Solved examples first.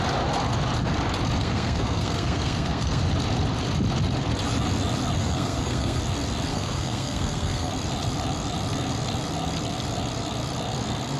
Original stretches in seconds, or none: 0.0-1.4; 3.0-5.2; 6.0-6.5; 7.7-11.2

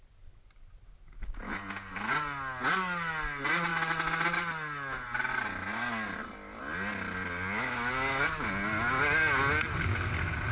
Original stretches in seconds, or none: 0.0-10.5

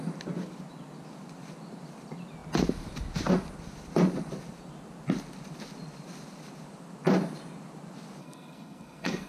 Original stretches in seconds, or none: 0.0-8.2

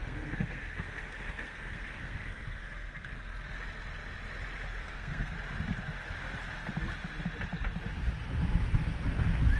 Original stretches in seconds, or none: 3.1-4.8; 5.3-9.6

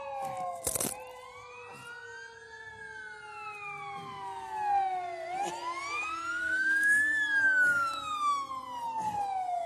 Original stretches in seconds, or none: 0.0-6.4; 7.0-9.7

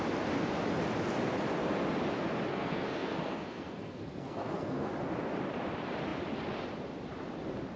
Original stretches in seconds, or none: 0.0-2.5; 4.9-7.8